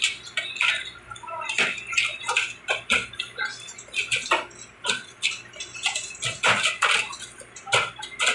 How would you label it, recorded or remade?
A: recorded